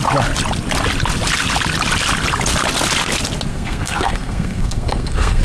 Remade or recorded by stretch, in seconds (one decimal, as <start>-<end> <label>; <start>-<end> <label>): 0.0-3.5 recorded; 3.5-5.4 remade